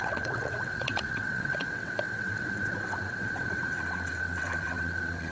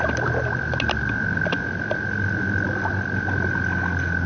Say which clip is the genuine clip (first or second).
second